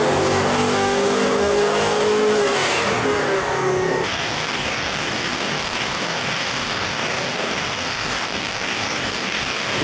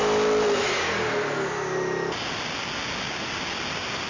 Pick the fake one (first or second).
first